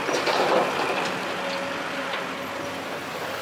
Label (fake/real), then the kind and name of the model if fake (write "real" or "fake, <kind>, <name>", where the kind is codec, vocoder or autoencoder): real